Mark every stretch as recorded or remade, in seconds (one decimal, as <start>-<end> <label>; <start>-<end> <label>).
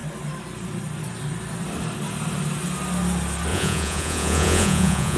0.0-3.5 recorded; 3.5-5.2 remade